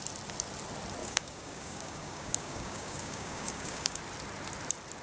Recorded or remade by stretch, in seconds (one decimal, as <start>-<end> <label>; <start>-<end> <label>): 0.0-1.0 recorded; 1.0-4.0 remade; 4.0-5.0 recorded